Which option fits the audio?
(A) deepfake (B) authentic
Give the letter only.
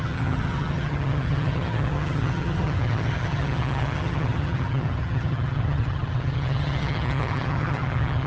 A